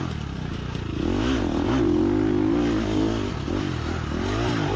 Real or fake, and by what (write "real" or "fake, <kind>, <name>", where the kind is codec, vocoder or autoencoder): real